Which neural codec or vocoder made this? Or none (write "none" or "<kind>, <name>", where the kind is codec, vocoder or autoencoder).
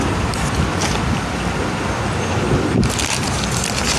none